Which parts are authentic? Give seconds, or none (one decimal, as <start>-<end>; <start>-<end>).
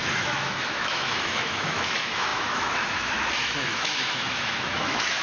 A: none